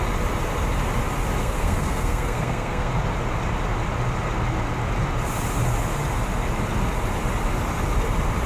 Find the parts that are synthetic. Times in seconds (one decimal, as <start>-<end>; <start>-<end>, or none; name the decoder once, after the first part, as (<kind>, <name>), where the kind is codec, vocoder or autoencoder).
1.4-2.9 (codec, SNAC)